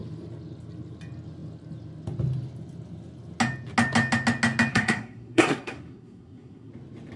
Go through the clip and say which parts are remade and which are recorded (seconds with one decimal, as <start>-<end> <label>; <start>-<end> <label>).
0.0-4.7 recorded; 4.7-6.7 remade; 6.7-7.2 recorded